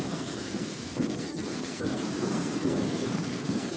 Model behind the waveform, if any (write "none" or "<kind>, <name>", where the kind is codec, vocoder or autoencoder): codec, SNAC